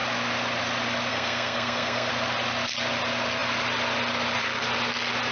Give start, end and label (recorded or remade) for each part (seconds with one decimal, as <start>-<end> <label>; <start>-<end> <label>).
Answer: 0.0-1.1 recorded; 1.1-2.1 remade; 2.1-5.3 recorded